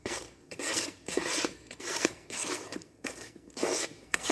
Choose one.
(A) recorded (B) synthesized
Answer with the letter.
B